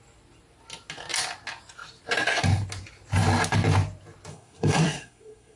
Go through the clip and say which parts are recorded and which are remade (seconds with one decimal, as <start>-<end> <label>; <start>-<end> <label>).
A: 0.0-4.3 recorded; 4.3-5.6 remade